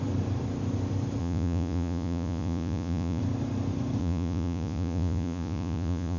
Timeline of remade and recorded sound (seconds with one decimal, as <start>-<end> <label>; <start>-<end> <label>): 0.0-1.2 recorded; 1.2-3.2 remade; 3.2-4.0 recorded; 4.0-6.2 remade